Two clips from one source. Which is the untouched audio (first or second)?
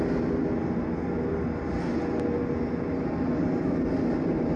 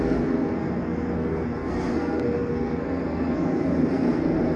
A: first